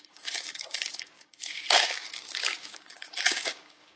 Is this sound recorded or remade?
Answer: remade